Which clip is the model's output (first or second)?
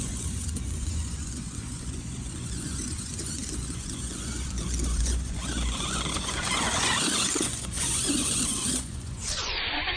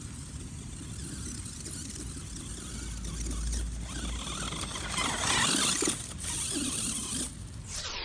first